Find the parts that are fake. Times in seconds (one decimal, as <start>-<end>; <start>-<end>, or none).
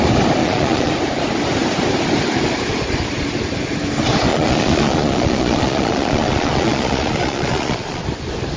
0.4-0.9; 4.3-8.0